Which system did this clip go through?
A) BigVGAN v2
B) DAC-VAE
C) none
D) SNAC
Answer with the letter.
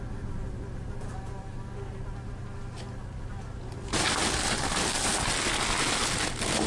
C